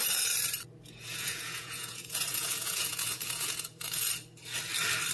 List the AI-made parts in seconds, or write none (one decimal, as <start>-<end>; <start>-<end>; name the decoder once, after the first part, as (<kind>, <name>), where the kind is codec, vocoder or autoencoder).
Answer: 1.0-4.1 (vocoder, Vocos)